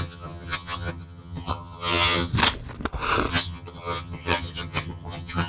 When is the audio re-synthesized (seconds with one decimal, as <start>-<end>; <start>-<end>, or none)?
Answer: 0.0-2.3; 3.3-5.5